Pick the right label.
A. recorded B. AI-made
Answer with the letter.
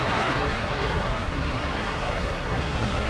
B